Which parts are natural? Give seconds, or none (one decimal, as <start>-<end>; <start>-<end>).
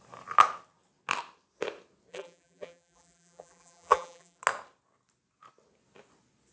0.0-2.1; 4.4-6.5